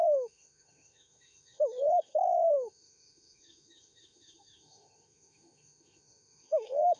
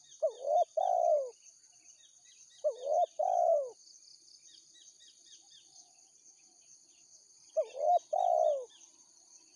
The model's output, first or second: first